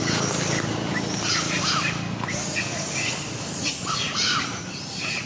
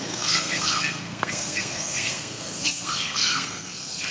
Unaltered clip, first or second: first